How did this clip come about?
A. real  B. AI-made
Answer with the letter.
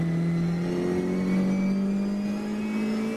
A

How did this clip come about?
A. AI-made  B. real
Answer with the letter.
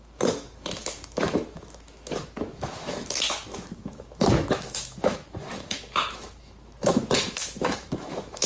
A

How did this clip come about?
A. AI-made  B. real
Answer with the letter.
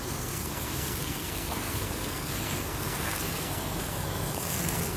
A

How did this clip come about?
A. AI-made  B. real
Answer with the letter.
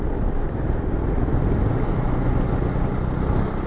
B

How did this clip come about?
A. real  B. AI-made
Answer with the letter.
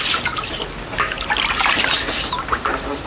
A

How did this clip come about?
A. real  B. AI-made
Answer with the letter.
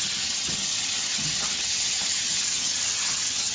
B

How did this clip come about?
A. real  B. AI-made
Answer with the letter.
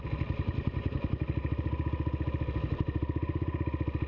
A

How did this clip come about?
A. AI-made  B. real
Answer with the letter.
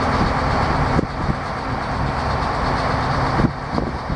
B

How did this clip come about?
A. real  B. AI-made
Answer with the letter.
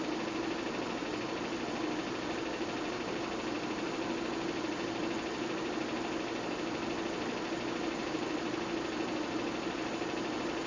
A